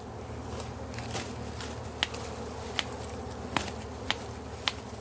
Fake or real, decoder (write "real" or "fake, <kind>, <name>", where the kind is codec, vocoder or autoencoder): real